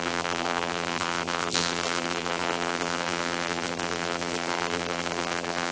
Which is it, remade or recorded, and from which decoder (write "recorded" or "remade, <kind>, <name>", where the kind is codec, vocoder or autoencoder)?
remade, vocoder, BigVGAN v2